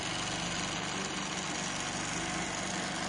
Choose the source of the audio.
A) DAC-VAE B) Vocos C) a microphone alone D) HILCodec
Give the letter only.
C